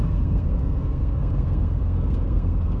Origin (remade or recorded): remade